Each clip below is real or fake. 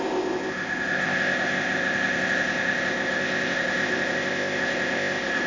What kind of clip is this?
fake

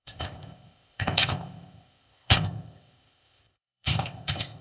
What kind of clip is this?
fake